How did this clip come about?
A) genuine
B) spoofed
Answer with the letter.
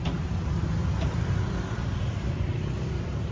B